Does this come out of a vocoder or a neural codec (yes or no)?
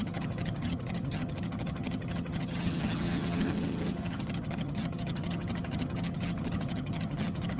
yes